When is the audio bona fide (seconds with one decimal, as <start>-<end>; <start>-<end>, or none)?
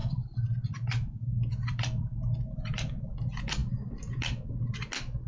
3.2-3.6; 4.5-5.3